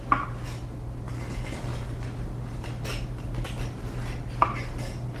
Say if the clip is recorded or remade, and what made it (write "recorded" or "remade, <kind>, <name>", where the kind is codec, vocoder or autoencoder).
recorded